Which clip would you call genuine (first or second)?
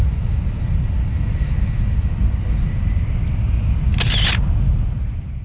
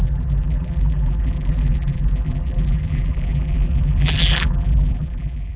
first